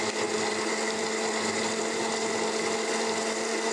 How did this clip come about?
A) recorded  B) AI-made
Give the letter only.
A